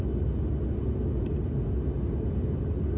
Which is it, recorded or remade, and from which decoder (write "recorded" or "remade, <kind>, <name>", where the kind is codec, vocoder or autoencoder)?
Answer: recorded